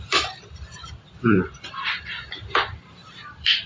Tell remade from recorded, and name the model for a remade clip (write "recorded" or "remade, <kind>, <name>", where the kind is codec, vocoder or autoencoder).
remade, vocoder, BigVGAN v2